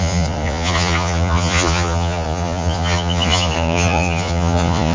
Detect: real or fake fake